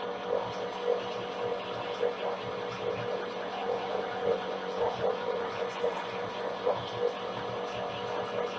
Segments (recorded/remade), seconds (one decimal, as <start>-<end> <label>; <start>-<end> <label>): 0.0-3.6 recorded; 3.6-6.7 remade; 6.7-8.6 recorded